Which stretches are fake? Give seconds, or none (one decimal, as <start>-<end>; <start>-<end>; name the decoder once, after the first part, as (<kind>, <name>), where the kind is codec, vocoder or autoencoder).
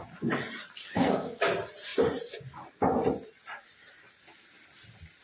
0.9-1.4 (codec, SNAC)